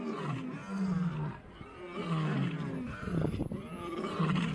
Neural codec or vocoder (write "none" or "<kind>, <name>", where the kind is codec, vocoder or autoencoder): none